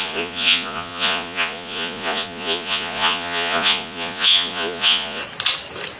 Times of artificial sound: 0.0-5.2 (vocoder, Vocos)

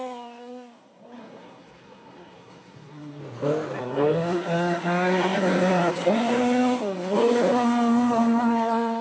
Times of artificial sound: 0.0-3.2 (codec, SNAC); 3.8-9.0

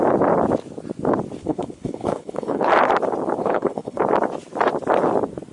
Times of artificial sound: 1.4-2.7 (codec, HILCodec); 3.4-4.0

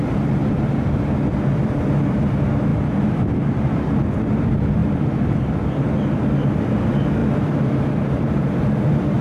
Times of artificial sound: 0.4-1.0 (vocoder, BigVGAN v2); 4.8-5.4; 7.2-9.2

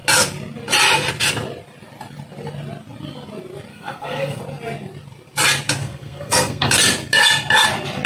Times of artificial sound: 3.7-4.4 (codec, SNAC); 5.8-6.7